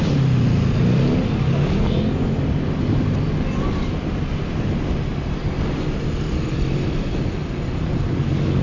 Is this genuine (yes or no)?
yes